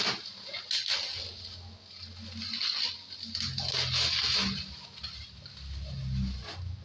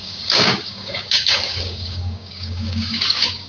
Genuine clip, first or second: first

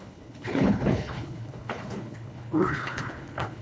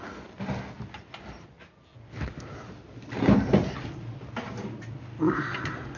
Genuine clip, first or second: second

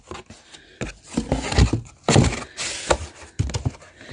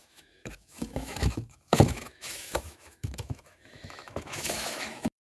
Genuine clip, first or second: first